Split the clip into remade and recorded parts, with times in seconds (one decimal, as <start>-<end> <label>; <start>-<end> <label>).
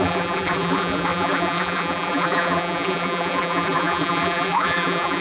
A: 0.0-5.2 remade